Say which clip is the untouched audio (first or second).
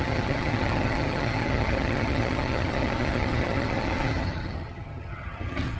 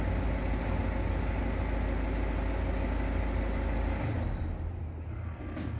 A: second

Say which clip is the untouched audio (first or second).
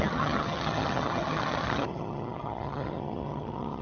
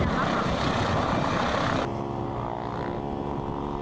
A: second